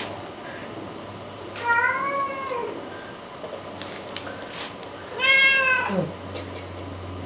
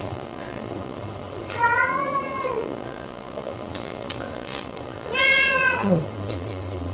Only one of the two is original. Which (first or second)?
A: first